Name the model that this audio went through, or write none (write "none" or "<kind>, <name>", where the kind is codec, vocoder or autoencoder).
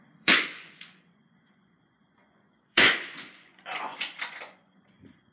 vocoder, Vocos